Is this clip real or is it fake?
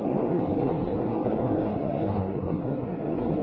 fake